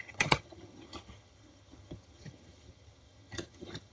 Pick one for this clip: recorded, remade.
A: remade